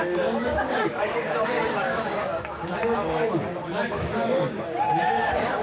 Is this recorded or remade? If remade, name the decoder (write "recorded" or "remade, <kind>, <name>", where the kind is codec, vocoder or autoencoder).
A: remade, codec, DAC